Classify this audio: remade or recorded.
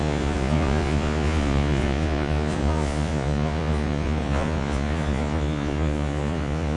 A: remade